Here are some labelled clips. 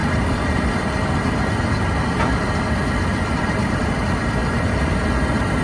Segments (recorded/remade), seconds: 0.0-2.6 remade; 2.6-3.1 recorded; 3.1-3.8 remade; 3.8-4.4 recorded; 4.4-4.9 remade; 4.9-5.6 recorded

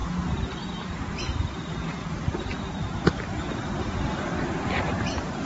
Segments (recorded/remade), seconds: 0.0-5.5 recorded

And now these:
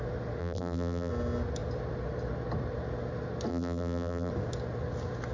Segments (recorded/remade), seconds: 0.0-0.4 recorded; 0.4-1.1 remade; 1.1-3.5 recorded; 3.5-4.3 remade; 4.3-5.3 recorded

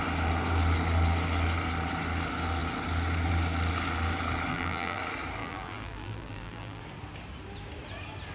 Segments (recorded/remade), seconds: 0.0-4.5 recorded; 4.5-5.0 remade; 5.0-5.4 recorded; 5.4-6.8 remade; 6.8-8.3 recorded

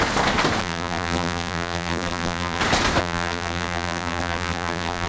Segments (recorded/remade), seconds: 0.0-0.6 recorded; 0.6-2.6 remade; 2.6-3.0 recorded; 3.0-5.1 remade

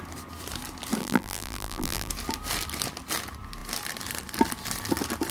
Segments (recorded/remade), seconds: 0.0-1.0 recorded; 1.0-2.1 remade; 2.1-5.3 recorded

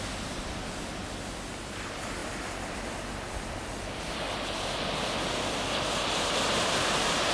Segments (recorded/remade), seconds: 0.0-7.3 remade